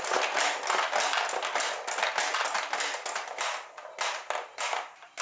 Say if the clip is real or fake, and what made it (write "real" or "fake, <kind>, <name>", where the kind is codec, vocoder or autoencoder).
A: real